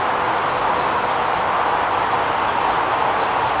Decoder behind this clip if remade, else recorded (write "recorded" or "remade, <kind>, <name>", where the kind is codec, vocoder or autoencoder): recorded